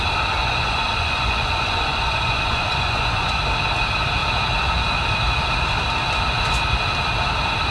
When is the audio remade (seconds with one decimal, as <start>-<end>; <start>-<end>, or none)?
0.4-3.3